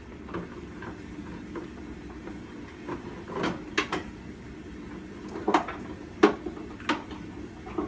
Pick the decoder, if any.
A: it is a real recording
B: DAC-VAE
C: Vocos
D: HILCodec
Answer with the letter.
A